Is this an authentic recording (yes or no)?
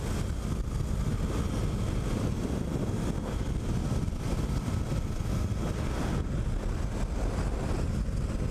yes